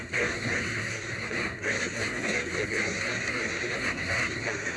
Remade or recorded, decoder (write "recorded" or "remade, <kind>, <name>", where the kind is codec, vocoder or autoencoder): remade, codec, SNAC